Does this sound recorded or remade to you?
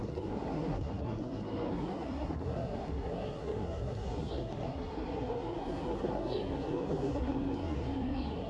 remade